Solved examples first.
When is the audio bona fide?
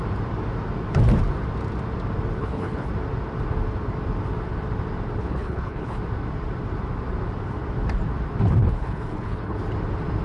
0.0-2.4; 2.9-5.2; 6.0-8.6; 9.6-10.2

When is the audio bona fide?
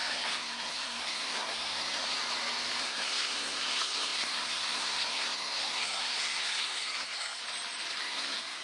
2.2-2.8; 7.4-8.0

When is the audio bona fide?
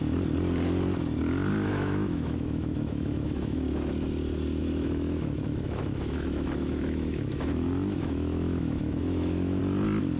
0.0-1.5; 3.9-4.6; 9.6-10.2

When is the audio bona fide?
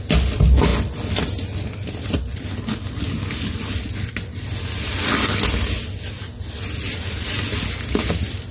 0.0-8.5